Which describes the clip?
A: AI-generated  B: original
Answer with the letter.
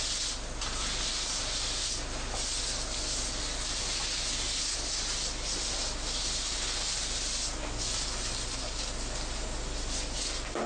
B